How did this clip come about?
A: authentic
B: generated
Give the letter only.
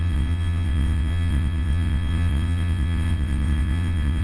B